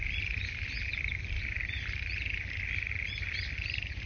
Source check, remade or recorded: recorded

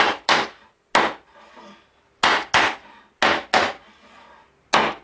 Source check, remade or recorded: recorded